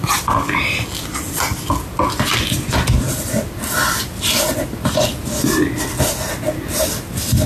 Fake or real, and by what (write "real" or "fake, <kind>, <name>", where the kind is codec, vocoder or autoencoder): real